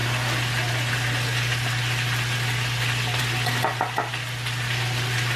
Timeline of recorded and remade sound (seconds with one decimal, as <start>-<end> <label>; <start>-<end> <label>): 0.0-5.4 recorded

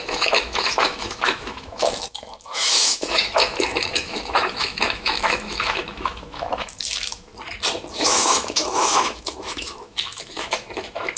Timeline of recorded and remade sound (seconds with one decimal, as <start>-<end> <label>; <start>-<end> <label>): 0.0-7.3 remade; 7.3-7.9 recorded; 7.9-11.2 remade